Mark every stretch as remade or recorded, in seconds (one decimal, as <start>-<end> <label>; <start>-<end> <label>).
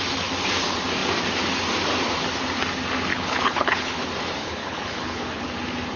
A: 0.0-3.1 recorded; 3.1-4.0 remade; 4.0-4.4 recorded; 4.4-5.5 remade; 5.5-6.0 recorded